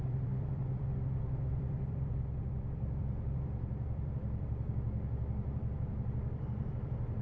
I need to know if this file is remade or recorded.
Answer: remade